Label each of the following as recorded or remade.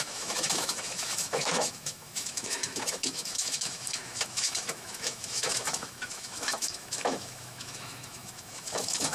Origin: remade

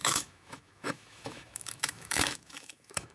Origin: remade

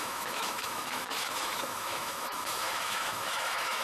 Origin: remade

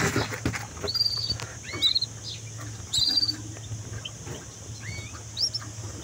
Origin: recorded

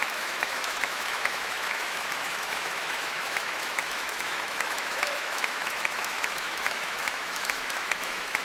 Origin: remade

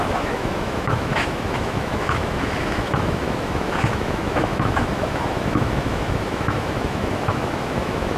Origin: remade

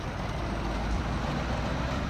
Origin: recorded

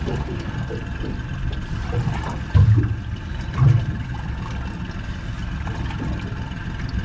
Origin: recorded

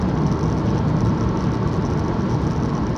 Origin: recorded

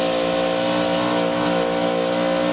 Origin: recorded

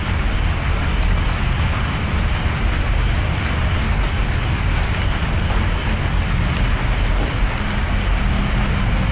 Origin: recorded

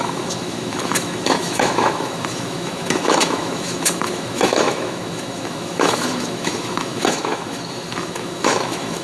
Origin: remade